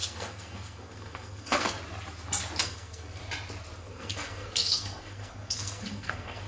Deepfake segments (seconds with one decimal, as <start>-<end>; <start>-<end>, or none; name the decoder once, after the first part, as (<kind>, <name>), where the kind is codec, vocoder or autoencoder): 0.0-1.8 (codec, SNAC); 2.6-3.2; 3.8-6.5